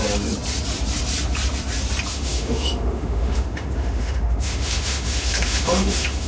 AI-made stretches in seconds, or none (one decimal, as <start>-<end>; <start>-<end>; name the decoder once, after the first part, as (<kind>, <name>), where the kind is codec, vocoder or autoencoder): 2.1-6.3 (autoencoder, DAC-VAE)